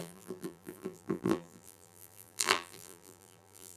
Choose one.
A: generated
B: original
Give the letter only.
A